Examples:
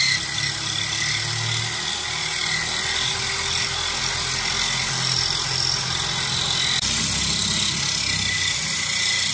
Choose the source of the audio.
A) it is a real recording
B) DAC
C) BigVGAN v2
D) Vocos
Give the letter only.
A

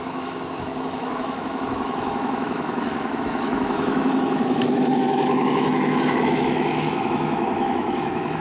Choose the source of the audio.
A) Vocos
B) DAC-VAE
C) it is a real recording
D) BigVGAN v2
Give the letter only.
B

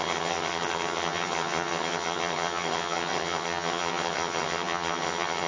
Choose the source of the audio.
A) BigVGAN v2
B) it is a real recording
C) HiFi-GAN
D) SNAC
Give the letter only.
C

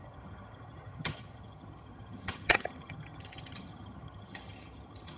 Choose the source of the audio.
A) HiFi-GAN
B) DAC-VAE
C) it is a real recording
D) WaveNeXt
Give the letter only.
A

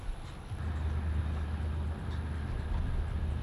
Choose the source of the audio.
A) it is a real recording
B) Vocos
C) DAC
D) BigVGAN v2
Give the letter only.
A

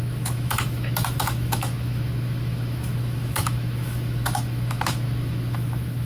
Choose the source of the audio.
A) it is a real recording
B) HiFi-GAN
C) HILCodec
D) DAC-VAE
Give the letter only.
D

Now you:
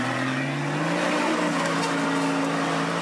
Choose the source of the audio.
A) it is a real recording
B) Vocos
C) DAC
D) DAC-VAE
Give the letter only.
A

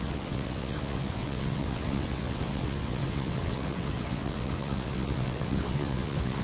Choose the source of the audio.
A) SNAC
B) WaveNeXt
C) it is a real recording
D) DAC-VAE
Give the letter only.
B